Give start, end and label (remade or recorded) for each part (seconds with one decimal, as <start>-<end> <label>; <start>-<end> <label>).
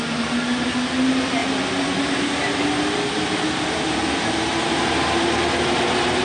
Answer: 0.0-6.2 recorded